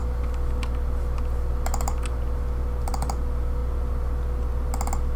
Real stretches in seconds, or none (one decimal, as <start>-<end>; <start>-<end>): 0.0-5.2